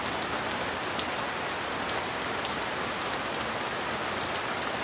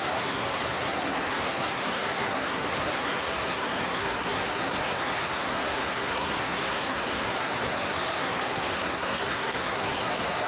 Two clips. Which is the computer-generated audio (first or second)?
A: second